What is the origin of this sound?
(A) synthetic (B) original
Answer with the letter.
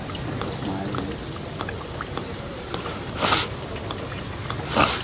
B